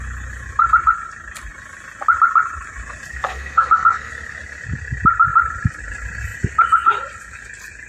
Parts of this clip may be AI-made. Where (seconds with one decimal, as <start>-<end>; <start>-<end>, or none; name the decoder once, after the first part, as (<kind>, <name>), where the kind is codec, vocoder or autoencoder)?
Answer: 3.1-4.1 (codec, SNAC)